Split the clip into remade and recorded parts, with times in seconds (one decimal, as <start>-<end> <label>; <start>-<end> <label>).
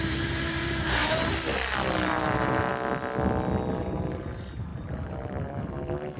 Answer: 0.0-1.0 remade; 1.0-2.1 recorded; 2.1-2.7 remade; 2.7-3.7 recorded; 3.7-6.2 remade